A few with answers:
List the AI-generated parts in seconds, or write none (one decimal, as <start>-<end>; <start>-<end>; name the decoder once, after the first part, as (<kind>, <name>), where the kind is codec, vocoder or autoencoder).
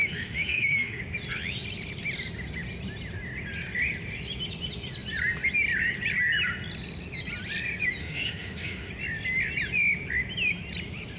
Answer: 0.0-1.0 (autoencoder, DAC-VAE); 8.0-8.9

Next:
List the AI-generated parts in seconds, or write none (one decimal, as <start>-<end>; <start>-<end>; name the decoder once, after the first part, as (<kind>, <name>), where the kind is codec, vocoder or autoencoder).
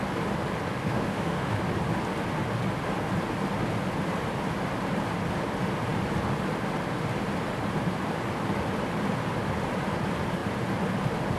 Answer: 0.8-1.6 (autoencoder, DAC-VAE)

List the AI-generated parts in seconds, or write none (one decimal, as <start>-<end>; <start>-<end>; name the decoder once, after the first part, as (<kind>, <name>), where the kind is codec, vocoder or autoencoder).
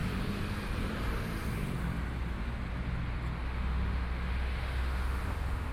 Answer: 3.4-5.7 (autoencoder, DAC-VAE)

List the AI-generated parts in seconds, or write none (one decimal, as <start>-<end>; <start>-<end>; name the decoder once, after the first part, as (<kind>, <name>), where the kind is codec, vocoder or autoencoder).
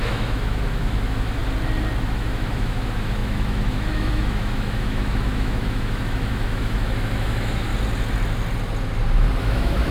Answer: 0.0-1.4 (autoencoder, DAC-VAE); 2.0-7.7; 9.4-9.9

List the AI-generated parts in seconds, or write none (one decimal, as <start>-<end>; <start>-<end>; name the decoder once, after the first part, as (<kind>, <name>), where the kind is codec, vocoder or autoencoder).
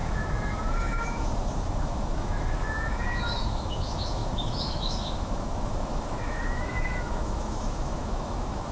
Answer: 0.0-8.7 (autoencoder, DAC-VAE)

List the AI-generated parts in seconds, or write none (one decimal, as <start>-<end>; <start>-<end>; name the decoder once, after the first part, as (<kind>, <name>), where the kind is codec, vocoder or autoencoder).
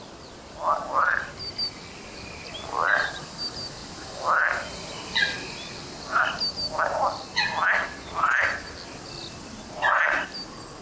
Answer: none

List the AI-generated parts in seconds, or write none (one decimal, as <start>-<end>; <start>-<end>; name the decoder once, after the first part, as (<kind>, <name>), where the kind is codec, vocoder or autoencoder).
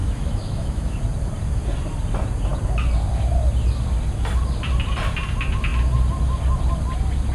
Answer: 0.0-1.0 (autoencoder, DAC-VAE)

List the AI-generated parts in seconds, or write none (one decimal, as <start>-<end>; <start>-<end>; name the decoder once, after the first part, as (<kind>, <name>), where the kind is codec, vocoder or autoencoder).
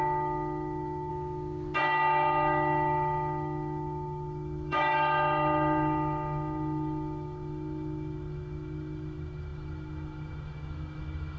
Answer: 0.0-1.1 (autoencoder, DAC-VAE); 1.8-11.4